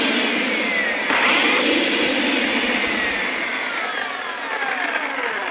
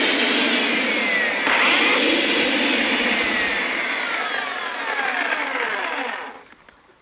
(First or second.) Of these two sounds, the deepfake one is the first